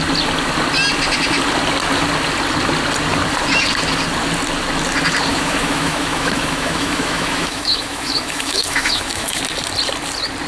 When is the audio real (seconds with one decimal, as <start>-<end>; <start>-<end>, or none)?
0.0-5.3; 9.4-10.5